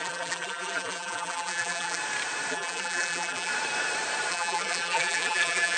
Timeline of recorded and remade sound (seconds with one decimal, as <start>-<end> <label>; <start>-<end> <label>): 0.0-2.0 remade; 2.0-2.5 recorded; 2.5-3.5 remade; 3.5-4.3 recorded; 4.3-5.8 remade